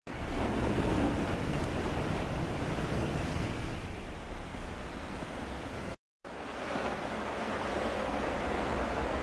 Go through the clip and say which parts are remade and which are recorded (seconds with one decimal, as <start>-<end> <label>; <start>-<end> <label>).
0.0-1.6 remade; 1.6-2.8 recorded; 2.8-3.7 remade; 3.7-4.2 recorded; 4.2-9.2 remade